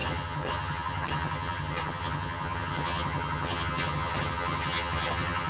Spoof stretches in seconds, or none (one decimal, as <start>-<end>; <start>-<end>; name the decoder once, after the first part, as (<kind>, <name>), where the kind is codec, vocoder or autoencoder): 0.0-5.5 (vocoder, HiFi-GAN)